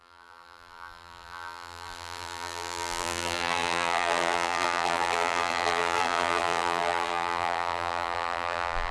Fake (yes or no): yes